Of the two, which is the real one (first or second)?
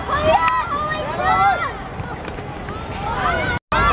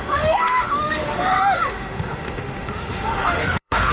first